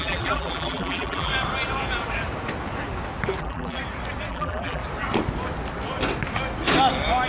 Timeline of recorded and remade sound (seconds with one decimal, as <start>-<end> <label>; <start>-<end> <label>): 0.0-1.3 remade; 1.3-3.4 recorded; 3.4-3.8 remade; 3.8-4.3 recorded; 4.3-4.8 remade; 4.8-7.3 recorded